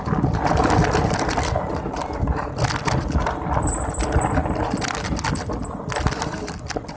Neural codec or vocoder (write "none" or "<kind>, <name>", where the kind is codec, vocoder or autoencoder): none